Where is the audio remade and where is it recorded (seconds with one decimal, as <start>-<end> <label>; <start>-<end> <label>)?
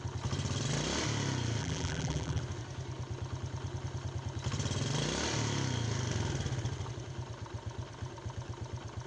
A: 0.0-1.6 recorded; 1.6-2.4 remade; 2.4-9.1 recorded